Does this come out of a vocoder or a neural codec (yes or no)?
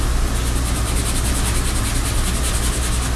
no